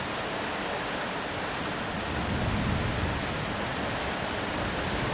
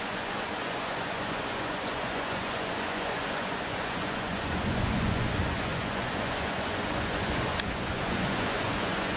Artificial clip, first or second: second